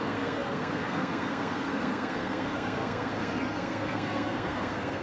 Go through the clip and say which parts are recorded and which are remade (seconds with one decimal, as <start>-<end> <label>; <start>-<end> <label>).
0.0-5.0 remade